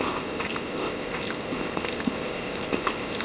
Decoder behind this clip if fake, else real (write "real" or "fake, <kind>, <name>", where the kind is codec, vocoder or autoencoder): fake, codec, ZipCodec